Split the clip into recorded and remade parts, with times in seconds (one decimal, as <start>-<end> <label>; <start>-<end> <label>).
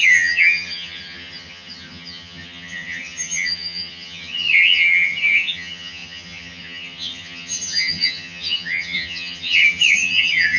0.0-10.6 remade